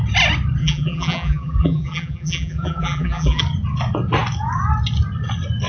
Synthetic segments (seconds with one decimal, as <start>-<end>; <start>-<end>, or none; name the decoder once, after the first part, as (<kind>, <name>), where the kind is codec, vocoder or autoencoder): 0.6-3.4 (vocoder, BigVGAN v2)